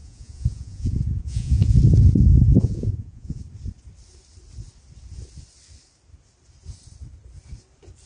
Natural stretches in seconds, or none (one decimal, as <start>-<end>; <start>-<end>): 1.8-2.3; 3.4-8.1